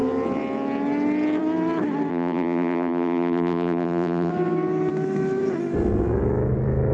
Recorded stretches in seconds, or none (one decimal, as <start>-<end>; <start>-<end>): 0.0-2.1; 4.3-6.9